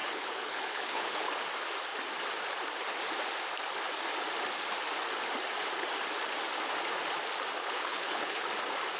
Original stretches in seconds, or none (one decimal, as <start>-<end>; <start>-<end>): 1.3-7.6; 8.5-9.0